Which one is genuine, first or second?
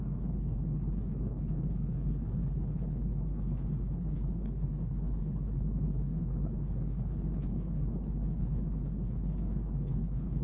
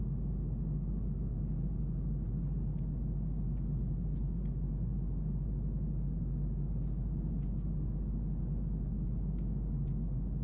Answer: second